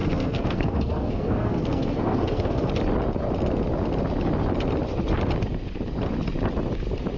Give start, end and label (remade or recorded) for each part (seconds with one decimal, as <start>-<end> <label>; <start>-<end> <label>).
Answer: 0.0-2.7 remade; 2.7-7.2 recorded